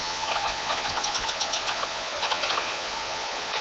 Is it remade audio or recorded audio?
remade